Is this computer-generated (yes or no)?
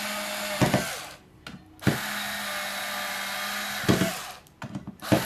no